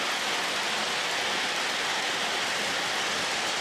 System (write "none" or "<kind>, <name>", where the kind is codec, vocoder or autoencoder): none